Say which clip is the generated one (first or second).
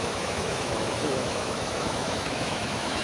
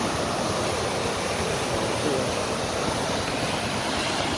first